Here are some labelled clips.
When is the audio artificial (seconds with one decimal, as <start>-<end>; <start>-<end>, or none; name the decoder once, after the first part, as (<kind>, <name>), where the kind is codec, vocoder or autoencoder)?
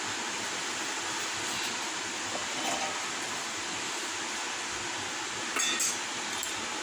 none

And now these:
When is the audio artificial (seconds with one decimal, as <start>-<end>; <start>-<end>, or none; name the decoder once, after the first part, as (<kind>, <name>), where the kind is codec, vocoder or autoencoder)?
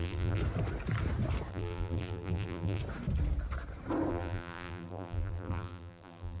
0.0-0.4 (vocoder, BigVGAN v2); 1.5-2.8; 4.1-6.4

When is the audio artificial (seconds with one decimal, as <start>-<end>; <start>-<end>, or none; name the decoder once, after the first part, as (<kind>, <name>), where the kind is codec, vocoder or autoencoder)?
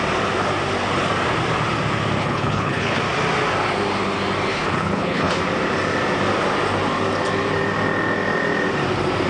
2.2-3.0 (codec, HILCodec); 4.5-5.4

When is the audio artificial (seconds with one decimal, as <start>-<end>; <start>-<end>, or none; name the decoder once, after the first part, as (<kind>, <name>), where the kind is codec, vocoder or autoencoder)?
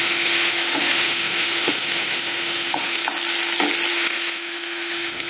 0.0-3.0 (autoencoder, DAC-VAE); 3.9-5.3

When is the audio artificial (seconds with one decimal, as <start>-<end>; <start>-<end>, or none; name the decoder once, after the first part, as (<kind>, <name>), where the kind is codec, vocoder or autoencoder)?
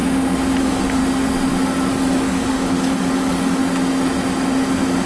0.6-1.0 (codec, DAC); 1.9-3.6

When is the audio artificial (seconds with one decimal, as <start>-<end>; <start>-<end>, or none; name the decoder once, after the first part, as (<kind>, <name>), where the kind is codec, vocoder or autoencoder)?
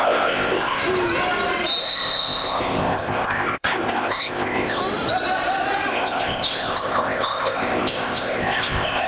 0.0-0.8 (codec, ZipCodec); 1.8-4.8; 5.9-9.1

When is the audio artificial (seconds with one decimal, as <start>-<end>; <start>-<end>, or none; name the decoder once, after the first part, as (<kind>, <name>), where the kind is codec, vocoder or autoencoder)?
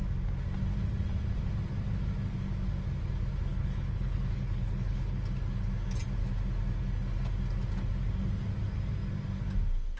3.5-5.2 (codec, HILCodec)